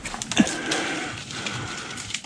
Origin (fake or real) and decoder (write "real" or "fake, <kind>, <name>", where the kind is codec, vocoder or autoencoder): real